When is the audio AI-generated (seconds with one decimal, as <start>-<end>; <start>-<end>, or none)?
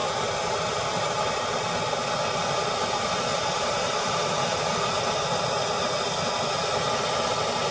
0.0-1.4; 3.3-4.3